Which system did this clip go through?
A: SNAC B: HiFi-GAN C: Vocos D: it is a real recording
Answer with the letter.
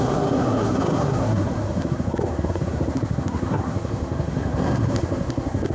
A